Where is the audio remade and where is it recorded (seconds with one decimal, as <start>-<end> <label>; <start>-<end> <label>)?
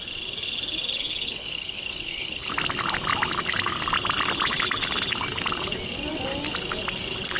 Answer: 0.0-0.9 recorded; 0.9-2.5 remade; 2.5-7.4 recorded